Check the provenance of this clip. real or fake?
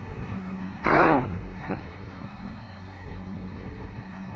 fake